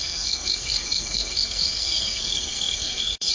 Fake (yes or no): yes